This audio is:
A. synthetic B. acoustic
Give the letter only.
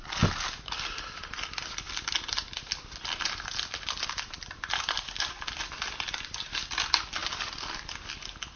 B